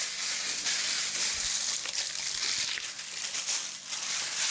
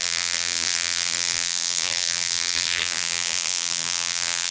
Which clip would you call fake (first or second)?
second